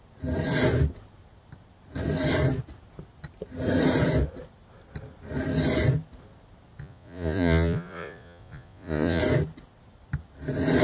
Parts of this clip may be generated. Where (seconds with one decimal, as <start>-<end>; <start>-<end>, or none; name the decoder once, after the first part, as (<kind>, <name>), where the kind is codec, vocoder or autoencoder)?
6.8-9.2 (vocoder, Vocos)